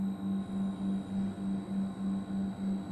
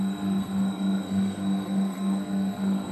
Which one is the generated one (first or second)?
second